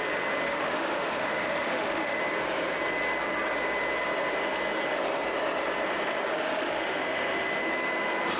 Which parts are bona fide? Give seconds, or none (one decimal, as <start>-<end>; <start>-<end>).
0.0-0.5; 2.2-6.3; 7.5-8.4